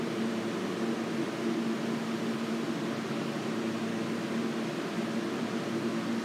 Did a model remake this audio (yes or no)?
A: no